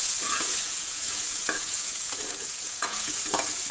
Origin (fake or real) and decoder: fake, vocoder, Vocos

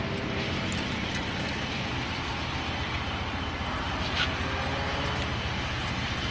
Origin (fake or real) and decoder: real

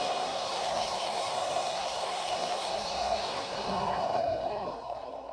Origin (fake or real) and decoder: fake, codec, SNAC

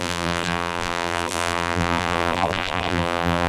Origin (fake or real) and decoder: fake, vocoder, BigVGAN v2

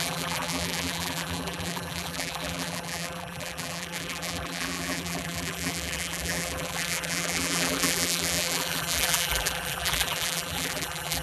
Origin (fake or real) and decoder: fake, vocoder, BigVGAN v2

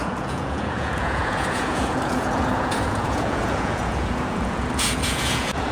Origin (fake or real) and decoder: fake, vocoder, Vocos